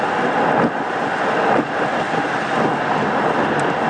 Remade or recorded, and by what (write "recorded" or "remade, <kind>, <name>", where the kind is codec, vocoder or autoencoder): recorded